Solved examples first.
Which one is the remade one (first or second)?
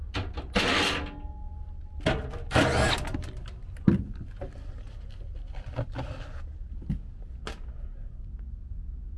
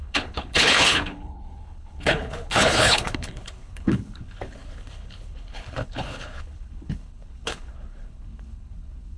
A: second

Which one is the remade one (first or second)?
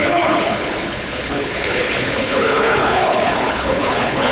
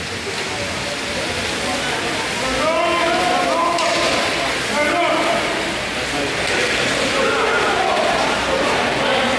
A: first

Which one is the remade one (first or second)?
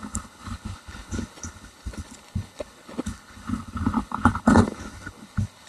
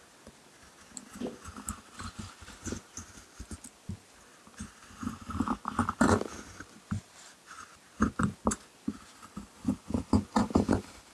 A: first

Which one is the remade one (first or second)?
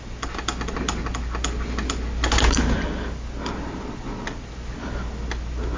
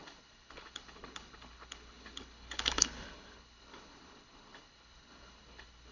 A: second